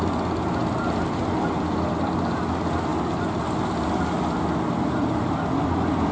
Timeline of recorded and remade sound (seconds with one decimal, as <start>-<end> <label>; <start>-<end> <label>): 0.0-6.1 recorded